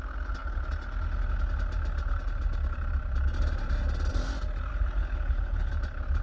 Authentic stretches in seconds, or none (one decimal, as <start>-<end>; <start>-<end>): 0.0-4.7; 5.7-6.2